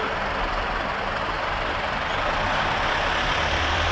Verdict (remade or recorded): remade